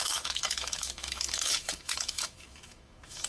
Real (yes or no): no